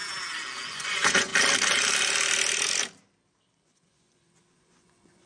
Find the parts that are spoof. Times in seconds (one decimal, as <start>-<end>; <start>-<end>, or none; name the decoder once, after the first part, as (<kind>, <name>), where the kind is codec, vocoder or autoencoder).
0.7-1.3 (vocoder, Vocos); 3.6-5.3